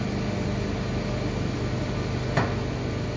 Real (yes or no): yes